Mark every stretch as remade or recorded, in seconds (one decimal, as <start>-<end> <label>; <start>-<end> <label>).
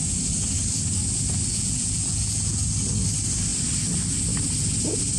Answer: 0.0-1.5 recorded; 1.5-2.6 remade; 2.6-5.2 recorded